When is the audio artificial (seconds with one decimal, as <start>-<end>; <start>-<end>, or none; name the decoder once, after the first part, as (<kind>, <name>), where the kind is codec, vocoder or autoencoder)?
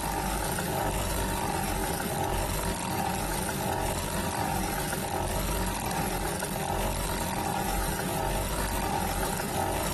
7.5-8.2 (vocoder, BigVGAN v2)